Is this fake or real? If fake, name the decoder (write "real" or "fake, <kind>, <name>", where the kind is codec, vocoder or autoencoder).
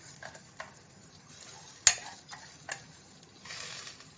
real